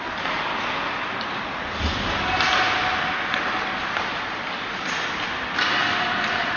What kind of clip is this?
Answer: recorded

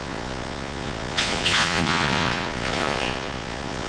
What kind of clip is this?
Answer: remade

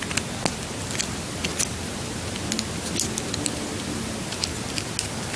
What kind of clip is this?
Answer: recorded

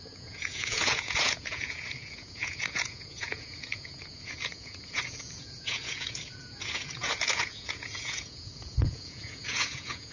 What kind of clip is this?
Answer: remade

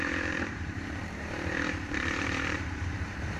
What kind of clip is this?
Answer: remade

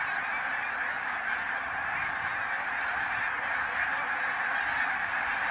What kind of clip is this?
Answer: recorded